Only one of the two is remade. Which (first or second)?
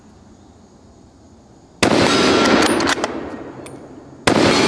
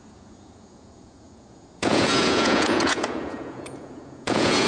second